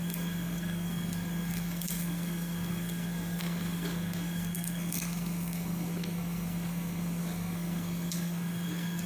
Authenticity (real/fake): fake